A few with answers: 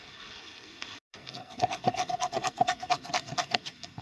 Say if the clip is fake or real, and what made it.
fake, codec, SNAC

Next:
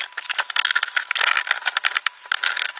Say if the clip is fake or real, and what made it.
real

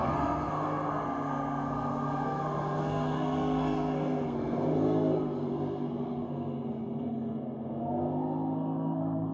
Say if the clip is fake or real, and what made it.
fake, codec, SNAC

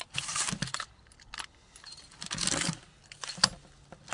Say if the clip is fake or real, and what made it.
real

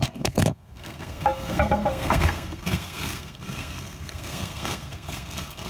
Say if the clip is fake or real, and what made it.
fake, codec, SNAC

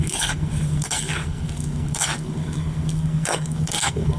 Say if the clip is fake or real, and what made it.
fake, codec, SNAC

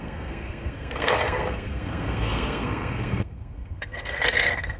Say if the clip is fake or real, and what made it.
fake, codec, SNAC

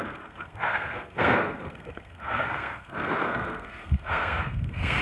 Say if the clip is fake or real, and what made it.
fake, codec, SNAC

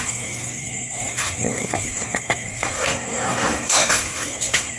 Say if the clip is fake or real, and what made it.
fake, codec, SNAC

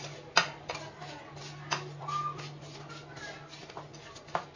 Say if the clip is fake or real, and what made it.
real